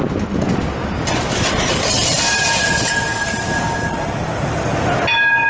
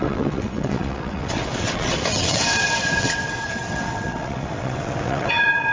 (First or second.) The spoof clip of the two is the second